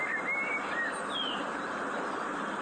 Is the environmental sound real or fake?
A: real